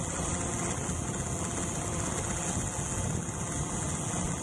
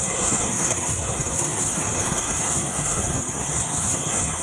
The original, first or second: first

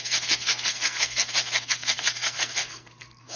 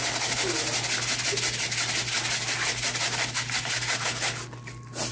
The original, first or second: second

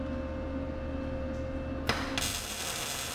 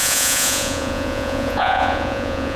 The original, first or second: first